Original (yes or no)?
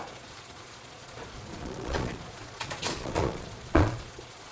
no